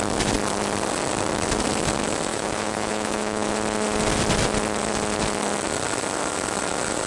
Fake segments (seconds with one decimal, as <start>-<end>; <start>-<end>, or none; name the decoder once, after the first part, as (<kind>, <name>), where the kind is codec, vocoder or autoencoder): 2.3-3.5 (autoencoder, DAC-VAE)